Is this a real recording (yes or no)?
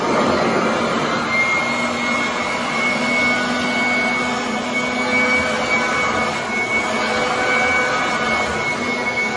yes